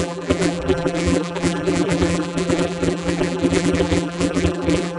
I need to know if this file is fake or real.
fake